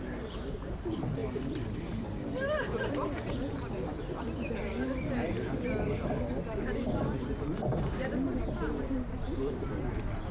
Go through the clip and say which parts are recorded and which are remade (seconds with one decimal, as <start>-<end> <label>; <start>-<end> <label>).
0.0-1.2 recorded; 1.2-4.2 remade; 4.2-8.3 recorded; 8.3-10.3 remade